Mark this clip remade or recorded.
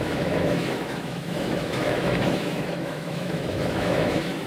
remade